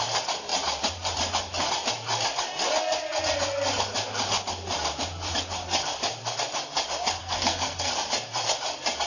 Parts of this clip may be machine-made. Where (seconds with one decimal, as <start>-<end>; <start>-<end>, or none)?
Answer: 7.2-7.9